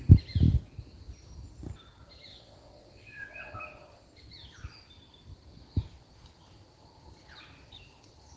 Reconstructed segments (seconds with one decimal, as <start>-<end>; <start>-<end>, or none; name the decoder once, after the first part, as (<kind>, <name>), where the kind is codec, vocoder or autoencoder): 2.3-3.6 (vocoder, WaveNeXt)